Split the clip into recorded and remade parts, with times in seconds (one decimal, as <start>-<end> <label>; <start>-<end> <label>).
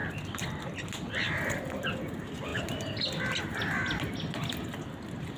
0.0-5.4 recorded